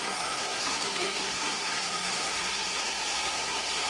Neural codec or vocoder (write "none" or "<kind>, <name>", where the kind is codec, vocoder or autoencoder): codec, SNAC